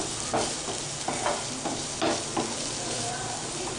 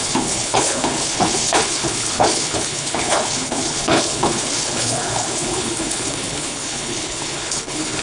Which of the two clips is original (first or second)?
first